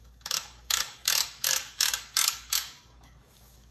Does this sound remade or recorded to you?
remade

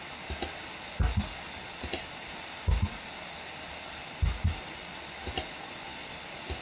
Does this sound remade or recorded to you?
recorded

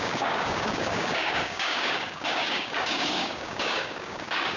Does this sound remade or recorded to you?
remade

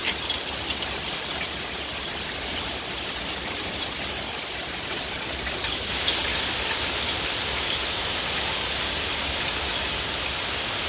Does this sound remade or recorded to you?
recorded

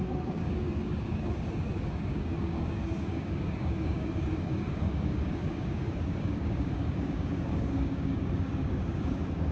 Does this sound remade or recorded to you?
remade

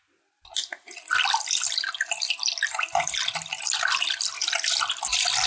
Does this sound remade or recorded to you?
recorded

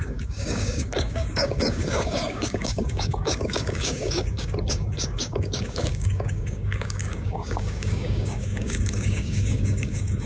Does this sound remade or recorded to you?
remade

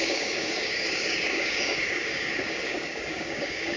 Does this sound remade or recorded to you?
remade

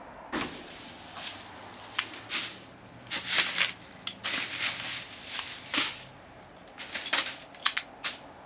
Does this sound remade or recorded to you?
recorded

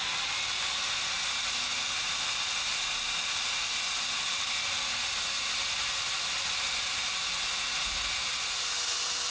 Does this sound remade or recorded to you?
recorded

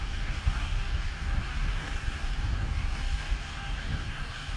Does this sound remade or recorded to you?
remade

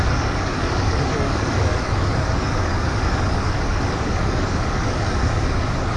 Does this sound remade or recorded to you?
remade